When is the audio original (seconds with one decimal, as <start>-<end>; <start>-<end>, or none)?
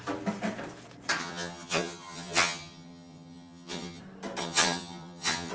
0.0-1.2; 4.0-4.4